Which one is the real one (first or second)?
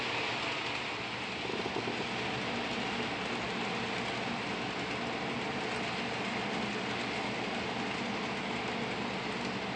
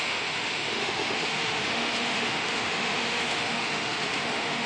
first